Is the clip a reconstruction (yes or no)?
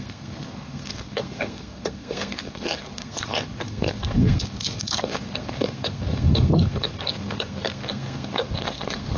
yes